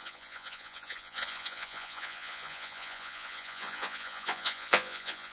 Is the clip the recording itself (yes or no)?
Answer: no